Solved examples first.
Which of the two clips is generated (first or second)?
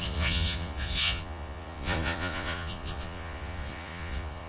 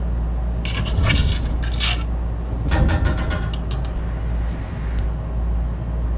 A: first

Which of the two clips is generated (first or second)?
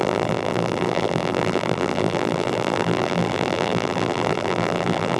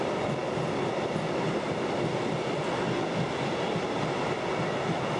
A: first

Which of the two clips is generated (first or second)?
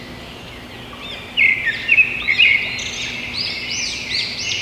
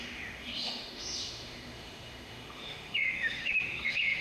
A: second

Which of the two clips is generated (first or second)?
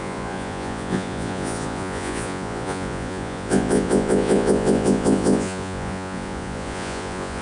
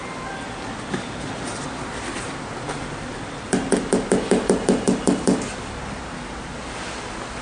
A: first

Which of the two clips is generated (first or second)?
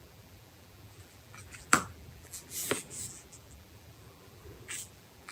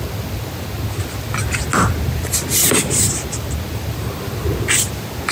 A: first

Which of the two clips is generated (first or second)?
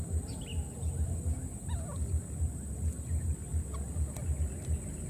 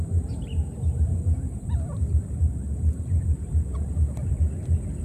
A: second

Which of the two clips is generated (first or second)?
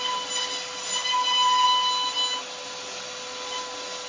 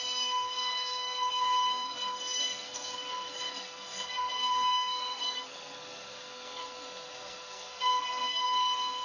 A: second